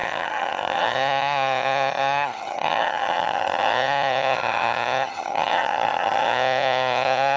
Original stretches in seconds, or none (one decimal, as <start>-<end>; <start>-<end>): none

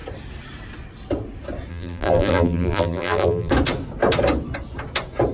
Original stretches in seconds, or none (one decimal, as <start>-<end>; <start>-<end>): 0.0-1.7; 3.5-5.3

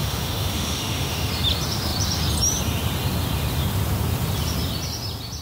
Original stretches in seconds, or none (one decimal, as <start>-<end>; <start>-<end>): 1.3-5.4